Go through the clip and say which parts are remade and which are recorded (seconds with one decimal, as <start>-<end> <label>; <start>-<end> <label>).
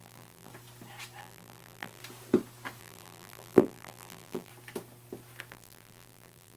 0.0-0.5 remade; 0.5-1.2 recorded; 1.2-2.0 remade; 2.0-2.8 recorded; 2.8-4.5 remade; 4.5-5.5 recorded; 5.5-6.6 remade